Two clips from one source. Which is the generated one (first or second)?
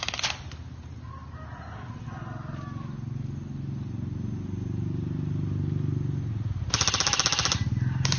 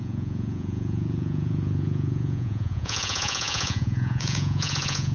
second